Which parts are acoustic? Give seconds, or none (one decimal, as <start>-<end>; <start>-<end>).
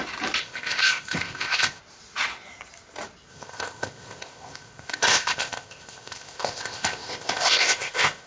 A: 0.0-0.4; 1.8-3.3